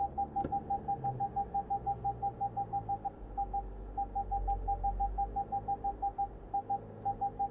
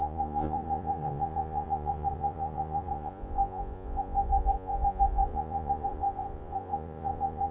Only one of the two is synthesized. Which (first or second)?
second